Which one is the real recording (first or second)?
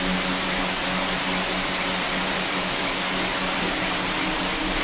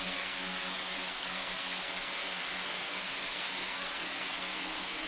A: first